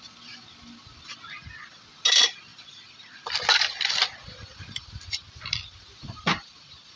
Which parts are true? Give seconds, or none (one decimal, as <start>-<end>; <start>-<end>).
0.0-7.0